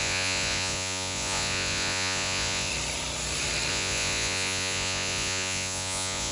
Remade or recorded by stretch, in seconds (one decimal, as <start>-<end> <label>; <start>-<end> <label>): 0.0-2.7 remade; 2.7-3.7 recorded; 3.7-6.3 remade